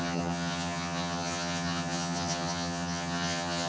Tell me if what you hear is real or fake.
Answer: fake